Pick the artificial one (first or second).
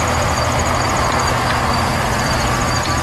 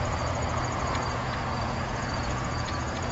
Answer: second